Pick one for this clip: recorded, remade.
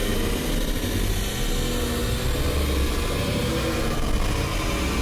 recorded